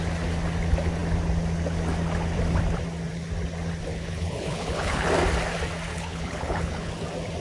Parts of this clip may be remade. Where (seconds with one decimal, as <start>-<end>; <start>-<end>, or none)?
3.9-5.1; 5.9-6.9